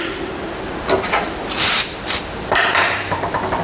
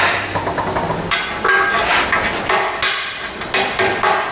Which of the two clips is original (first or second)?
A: second